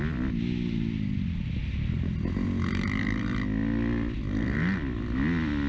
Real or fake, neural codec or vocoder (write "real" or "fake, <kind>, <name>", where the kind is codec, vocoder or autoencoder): real